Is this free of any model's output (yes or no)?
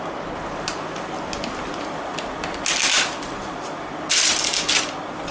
yes